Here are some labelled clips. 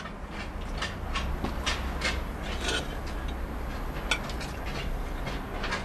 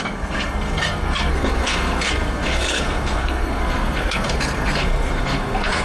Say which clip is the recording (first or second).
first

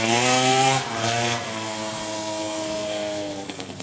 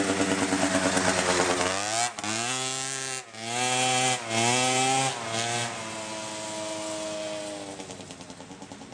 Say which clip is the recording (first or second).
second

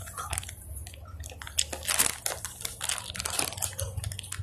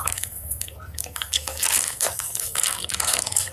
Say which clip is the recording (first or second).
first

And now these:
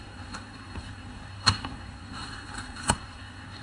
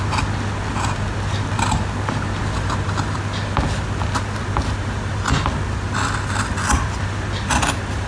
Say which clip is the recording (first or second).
second